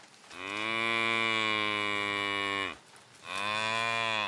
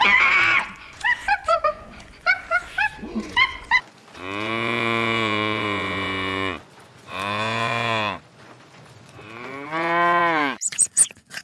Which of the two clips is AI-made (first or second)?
second